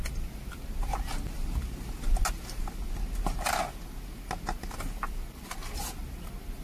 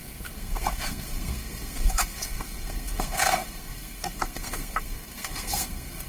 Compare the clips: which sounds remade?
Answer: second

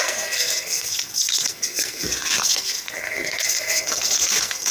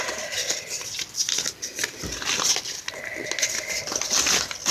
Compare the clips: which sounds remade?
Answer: first